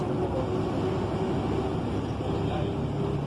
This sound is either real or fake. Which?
real